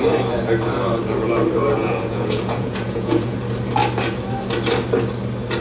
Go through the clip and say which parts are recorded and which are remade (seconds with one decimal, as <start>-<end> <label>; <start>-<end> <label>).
0.0-1.8 recorded; 1.8-3.4 remade; 3.4-5.6 recorded